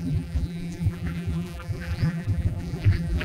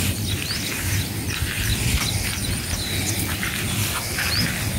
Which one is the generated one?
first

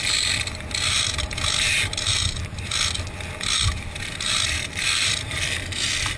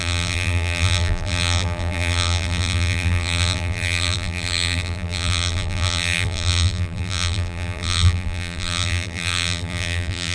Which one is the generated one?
second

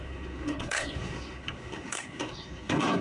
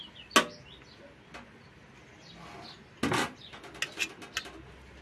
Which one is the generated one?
first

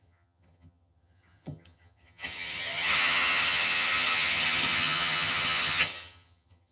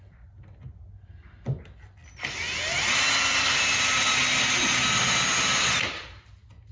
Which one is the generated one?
first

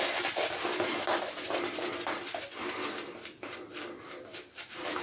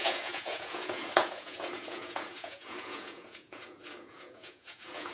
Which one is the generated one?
second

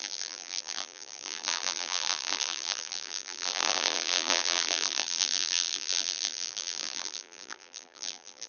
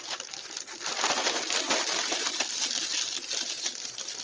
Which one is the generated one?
first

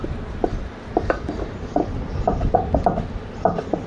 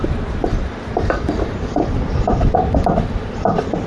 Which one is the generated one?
second